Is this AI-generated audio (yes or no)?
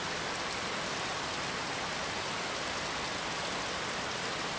no